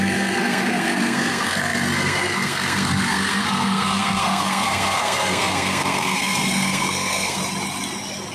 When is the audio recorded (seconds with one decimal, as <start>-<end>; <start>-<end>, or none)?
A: 7.4-8.3